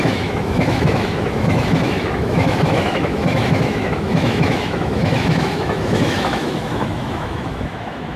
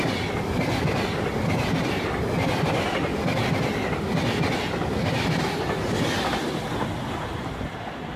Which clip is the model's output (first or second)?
first